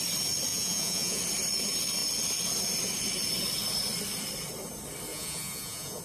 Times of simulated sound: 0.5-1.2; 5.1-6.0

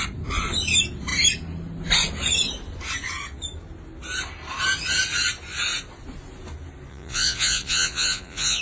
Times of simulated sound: 6.9-8.6

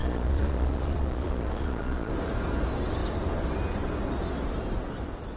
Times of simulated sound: 0.0-2.1

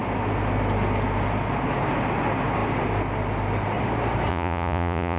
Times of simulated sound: 4.3-5.2

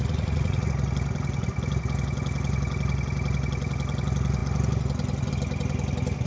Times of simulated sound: 0.0-0.7

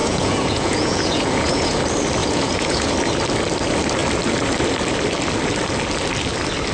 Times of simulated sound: 0.0-1.8; 2.2-2.9